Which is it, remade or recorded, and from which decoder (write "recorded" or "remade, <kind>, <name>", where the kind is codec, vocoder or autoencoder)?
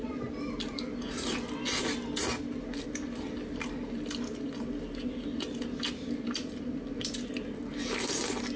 recorded